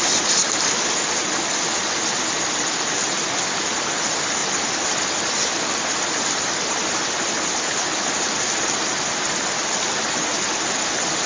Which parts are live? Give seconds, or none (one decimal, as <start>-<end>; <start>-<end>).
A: 0.0-11.3